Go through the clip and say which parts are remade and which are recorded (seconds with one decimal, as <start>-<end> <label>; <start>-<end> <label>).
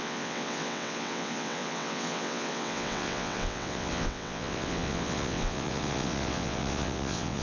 0.0-7.4 remade